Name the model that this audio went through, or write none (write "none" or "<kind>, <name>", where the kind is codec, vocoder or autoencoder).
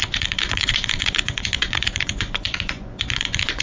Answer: vocoder, Vocos